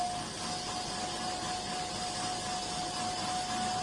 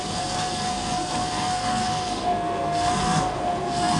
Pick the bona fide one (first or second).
first